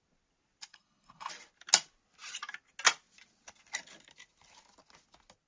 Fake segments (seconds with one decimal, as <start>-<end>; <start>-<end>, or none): 0.7-1.3